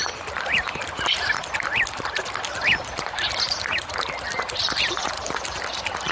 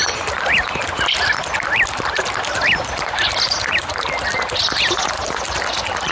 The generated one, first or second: first